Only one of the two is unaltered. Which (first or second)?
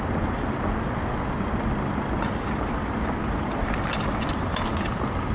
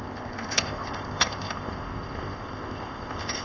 first